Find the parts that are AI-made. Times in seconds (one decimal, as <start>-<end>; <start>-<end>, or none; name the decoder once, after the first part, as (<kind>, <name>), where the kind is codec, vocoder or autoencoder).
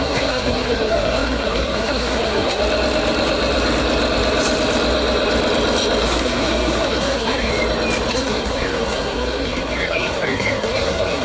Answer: 0.0-2.6 (codec, SNAC); 6.0-7.5; 8.1-11.2